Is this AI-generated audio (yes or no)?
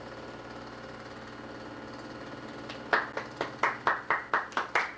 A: no